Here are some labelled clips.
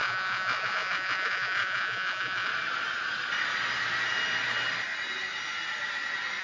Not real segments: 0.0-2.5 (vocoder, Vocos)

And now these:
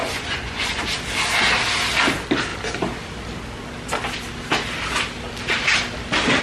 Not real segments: 0.0-0.9 (vocoder, Vocos)

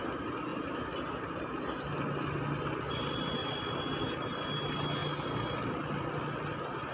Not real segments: none